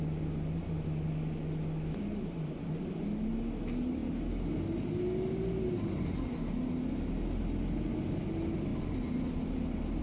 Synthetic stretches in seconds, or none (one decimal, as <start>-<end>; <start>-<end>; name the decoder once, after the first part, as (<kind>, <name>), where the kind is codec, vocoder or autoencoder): none